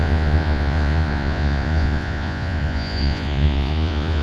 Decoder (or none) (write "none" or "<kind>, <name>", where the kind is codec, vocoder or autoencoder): vocoder, Vocos